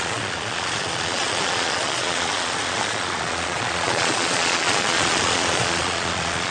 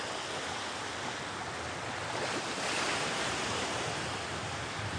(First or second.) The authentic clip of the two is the second